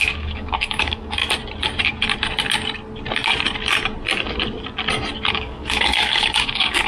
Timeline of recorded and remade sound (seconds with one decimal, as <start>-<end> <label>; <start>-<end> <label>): 0.0-1.2 remade; 1.2-5.3 recorded; 5.3-6.9 remade